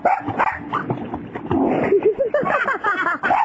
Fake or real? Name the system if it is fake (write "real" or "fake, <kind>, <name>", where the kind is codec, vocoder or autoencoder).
real